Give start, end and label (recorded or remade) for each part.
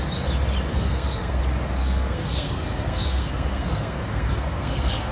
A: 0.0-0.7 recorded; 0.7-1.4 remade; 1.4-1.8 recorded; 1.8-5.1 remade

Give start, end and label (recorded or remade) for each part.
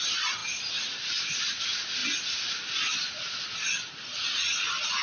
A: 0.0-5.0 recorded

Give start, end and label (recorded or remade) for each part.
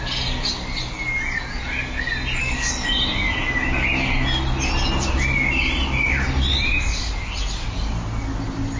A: 0.0-2.4 recorded; 2.4-2.9 remade; 2.9-8.8 recorded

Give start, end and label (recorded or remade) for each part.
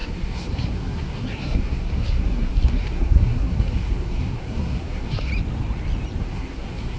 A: 0.0-5.3 remade; 5.3-6.2 recorded; 6.2-7.0 remade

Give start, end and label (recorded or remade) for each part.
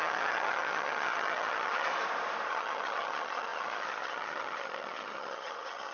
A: 0.0-1.9 remade; 1.9-2.5 recorded; 2.5-5.9 remade